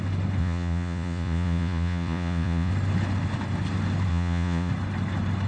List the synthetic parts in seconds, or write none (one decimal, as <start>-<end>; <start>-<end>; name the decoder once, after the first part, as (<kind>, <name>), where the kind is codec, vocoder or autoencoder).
0.4-2.7 (vocoder, Vocos); 4.1-4.7